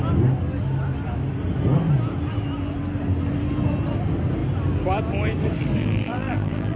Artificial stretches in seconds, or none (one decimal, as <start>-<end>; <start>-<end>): 5.8-6.8